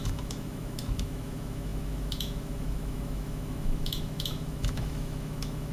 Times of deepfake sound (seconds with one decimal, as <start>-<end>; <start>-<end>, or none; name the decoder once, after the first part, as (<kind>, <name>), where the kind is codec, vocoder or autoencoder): 0.0-5.7 (autoencoder, DAC-VAE)